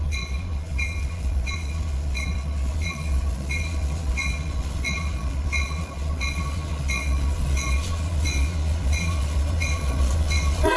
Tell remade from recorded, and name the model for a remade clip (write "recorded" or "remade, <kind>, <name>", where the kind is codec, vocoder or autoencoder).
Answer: remade, vocoder, Vocos